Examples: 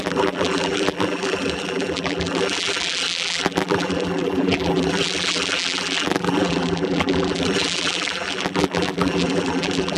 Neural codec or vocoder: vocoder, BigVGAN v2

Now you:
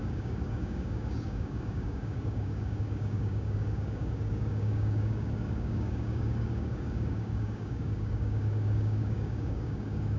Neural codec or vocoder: codec, DAC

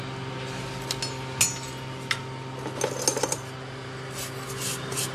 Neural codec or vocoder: none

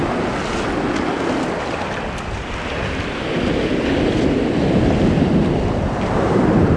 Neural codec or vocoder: none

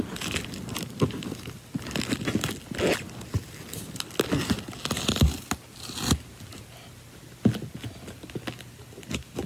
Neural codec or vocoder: none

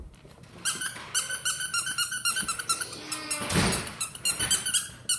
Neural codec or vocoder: none